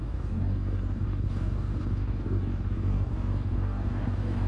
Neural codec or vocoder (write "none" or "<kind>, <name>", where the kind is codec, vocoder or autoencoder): codec, DAC